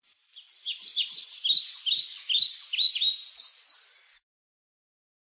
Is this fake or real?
real